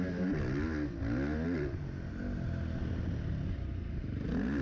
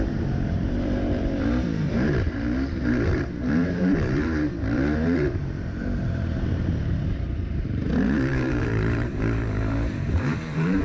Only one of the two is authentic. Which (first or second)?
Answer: first